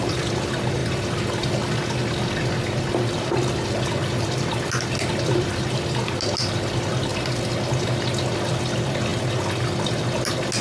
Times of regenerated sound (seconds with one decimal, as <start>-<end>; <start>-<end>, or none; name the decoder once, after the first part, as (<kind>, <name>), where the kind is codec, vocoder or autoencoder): 4.0-4.6 (vocoder, BigVGAN v2)